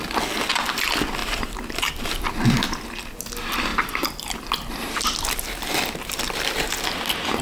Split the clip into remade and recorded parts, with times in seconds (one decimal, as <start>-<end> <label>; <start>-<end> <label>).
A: 0.0-1.2 recorded; 1.2-1.9 remade; 1.9-7.4 recorded